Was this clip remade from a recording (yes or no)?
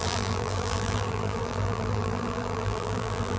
yes